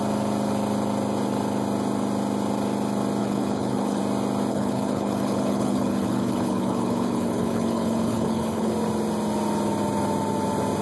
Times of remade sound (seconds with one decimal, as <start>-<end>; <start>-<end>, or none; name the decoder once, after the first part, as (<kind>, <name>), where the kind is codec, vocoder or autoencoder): 3.2-4.0 (codec, HILCodec); 4.5-8.7